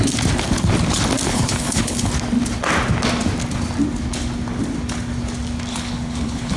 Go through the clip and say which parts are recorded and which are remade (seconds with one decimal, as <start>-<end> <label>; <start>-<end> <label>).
0.0-1.3 recorded; 1.3-2.1 remade; 2.1-5.7 recorded; 5.7-6.6 remade